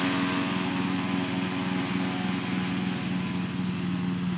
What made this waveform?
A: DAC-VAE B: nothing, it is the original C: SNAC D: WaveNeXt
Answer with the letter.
B